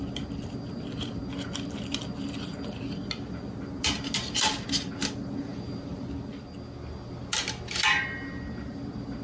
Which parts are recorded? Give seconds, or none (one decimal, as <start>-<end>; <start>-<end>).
0.0-9.2